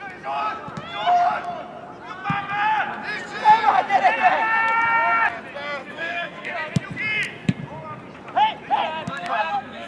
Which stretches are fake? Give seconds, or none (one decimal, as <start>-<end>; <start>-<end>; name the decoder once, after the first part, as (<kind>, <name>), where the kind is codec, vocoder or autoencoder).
5.8-6.5 (codec, SNAC); 9.1-9.9